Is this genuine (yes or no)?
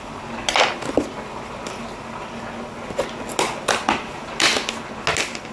yes